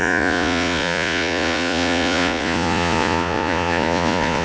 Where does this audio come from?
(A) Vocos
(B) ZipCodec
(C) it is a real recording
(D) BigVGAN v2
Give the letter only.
A